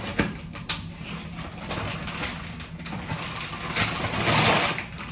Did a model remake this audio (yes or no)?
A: no